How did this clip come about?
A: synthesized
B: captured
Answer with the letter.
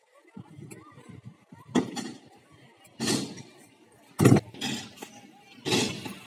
B